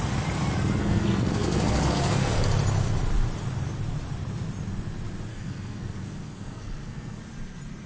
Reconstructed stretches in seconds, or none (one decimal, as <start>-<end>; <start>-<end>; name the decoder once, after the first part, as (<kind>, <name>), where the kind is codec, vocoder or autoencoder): 0.8-2.4 (codec, SNAC); 5.3-7.2